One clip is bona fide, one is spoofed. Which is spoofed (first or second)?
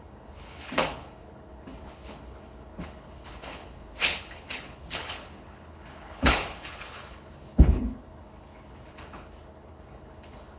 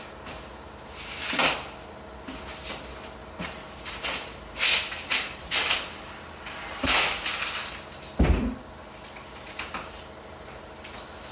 first